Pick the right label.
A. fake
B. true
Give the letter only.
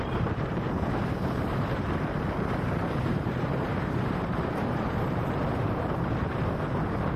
A